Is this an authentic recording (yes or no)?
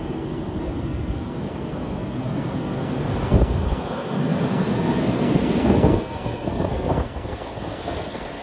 no